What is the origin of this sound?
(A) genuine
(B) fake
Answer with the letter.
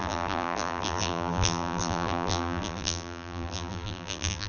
B